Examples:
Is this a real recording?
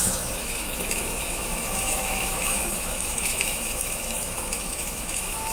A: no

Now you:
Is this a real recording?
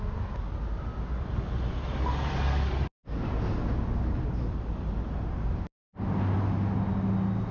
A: yes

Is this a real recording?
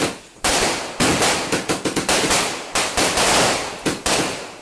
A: yes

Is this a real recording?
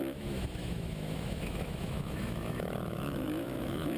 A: no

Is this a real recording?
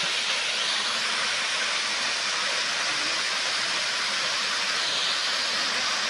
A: yes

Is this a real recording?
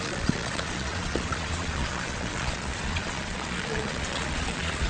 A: no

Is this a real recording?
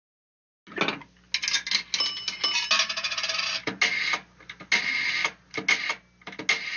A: yes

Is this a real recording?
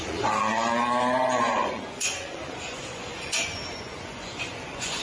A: no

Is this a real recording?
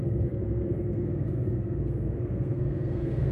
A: no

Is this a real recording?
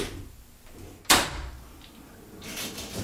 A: no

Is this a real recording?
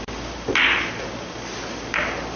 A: yes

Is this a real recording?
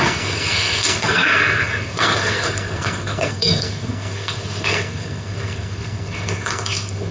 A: no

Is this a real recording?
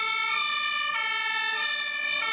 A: yes